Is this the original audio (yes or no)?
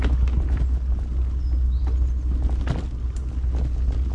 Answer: yes